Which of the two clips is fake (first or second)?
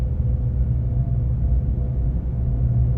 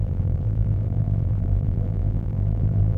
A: second